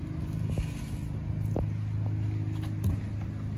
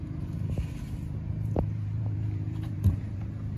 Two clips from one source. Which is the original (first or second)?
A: first